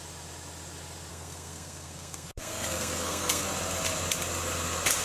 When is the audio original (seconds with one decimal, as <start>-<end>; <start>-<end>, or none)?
0.0-1.1; 3.4-5.0